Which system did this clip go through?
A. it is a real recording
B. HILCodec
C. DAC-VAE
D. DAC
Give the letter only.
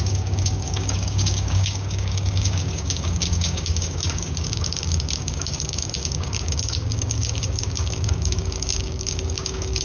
D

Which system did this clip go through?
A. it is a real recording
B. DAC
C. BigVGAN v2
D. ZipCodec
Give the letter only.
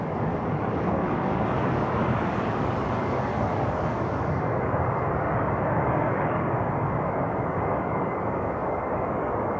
B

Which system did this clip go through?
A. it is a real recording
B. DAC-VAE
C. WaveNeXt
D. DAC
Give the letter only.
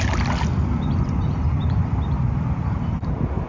A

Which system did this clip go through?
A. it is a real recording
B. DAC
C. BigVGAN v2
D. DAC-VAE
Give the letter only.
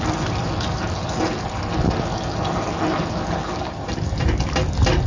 A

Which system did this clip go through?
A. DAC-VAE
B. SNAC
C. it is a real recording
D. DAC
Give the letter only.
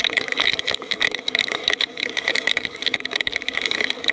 D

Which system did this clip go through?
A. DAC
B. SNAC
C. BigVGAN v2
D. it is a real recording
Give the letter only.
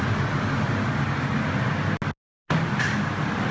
D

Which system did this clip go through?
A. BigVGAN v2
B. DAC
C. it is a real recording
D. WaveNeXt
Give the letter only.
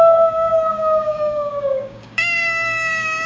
B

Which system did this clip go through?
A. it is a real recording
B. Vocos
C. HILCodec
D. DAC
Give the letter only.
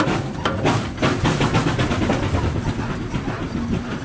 A